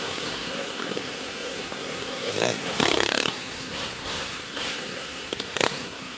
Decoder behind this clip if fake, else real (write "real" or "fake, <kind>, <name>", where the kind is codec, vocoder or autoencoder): fake, codec, SNAC